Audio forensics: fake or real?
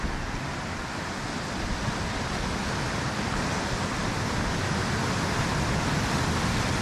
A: real